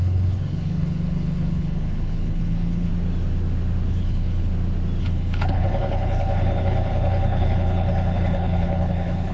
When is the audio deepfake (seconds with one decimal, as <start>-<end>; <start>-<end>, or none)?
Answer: 0.0-2.9; 3.9-4.5; 5.0-9.3